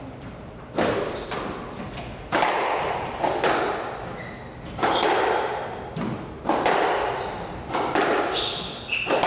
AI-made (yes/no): no